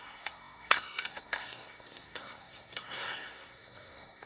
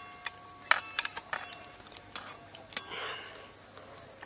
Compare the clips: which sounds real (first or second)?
second